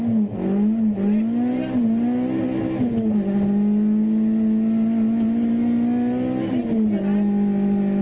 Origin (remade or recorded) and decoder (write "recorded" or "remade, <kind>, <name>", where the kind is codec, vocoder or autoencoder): recorded